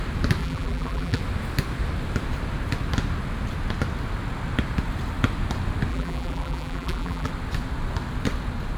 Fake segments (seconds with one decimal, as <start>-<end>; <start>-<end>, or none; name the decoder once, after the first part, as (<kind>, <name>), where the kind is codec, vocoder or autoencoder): 0.4-1.2 (vocoder, BigVGAN v2); 5.9-7.3